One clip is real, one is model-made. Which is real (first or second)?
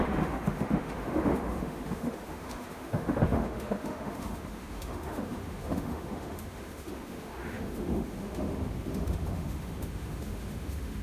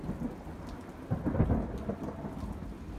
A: second